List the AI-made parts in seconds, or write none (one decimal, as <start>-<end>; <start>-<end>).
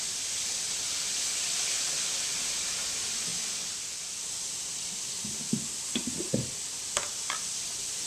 none